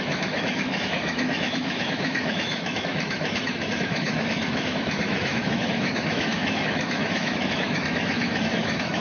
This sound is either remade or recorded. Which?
remade